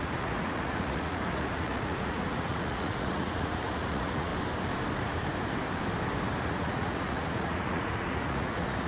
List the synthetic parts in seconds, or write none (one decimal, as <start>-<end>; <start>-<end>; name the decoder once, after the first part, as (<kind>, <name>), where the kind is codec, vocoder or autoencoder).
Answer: 0.0-4.3 (vocoder, Vocos); 6.4-8.9